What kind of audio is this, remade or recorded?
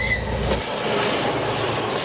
recorded